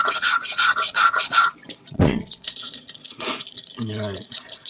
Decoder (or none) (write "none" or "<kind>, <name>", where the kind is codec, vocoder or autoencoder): vocoder, Vocos